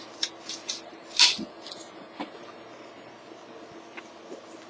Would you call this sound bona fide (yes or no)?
yes